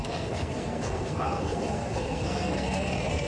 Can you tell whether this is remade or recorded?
remade